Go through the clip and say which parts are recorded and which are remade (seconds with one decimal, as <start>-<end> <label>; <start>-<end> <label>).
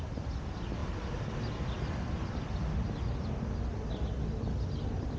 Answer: 0.0-5.2 recorded